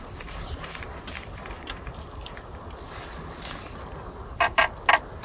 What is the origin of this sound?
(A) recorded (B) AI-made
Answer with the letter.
A